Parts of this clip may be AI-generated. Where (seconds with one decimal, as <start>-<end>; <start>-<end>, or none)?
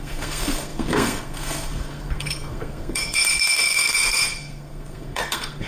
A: 0.0-5.7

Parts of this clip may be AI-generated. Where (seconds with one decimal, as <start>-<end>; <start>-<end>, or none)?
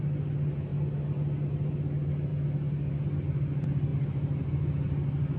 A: none